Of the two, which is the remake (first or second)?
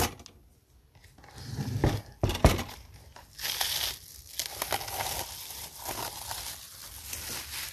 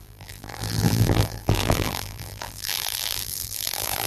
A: second